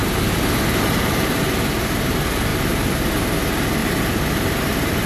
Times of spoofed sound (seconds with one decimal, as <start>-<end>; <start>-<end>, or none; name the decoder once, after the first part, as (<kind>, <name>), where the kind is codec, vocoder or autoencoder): 0.0-1.4 (vocoder, BigVGAN v2); 2.5-3.1; 3.8-5.1